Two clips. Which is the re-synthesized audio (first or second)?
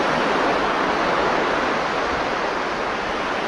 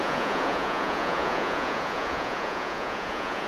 second